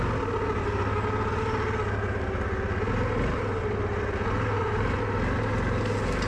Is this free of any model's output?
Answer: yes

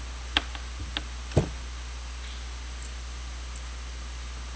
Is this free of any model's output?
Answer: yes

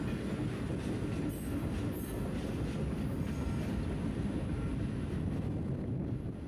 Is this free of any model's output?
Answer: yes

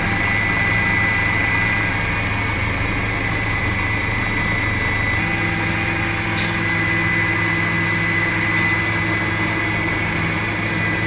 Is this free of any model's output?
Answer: yes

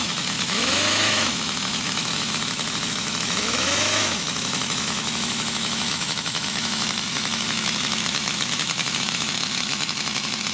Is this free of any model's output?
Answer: no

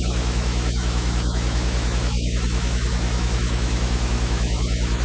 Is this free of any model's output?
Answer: no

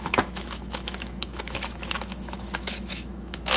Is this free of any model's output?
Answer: no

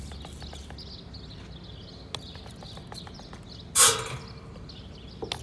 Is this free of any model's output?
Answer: yes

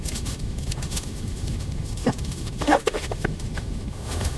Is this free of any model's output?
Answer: no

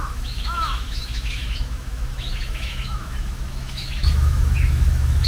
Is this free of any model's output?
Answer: no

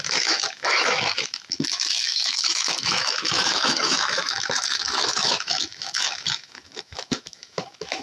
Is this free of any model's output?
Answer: no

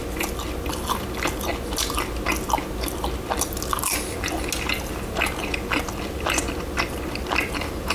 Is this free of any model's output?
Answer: yes